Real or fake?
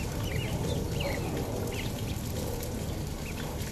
real